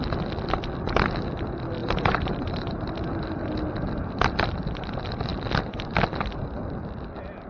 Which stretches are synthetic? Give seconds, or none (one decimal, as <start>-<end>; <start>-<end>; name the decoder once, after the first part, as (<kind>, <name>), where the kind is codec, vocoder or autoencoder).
1.8-2.8 (vocoder, BigVGAN v2)